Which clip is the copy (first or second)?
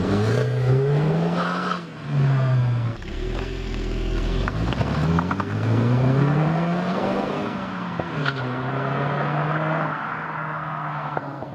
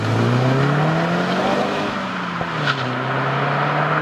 first